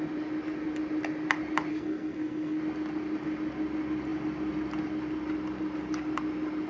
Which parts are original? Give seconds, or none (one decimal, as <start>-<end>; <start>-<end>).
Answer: 0.0-1.7; 2.6-6.7

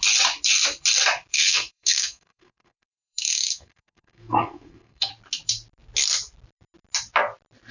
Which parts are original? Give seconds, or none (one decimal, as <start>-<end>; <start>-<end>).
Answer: 0.0-1.3; 5.1-7.7

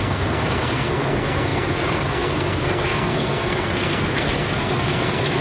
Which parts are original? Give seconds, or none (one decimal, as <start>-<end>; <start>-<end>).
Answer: none

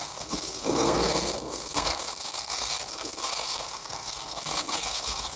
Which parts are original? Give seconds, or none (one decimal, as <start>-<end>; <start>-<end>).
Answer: none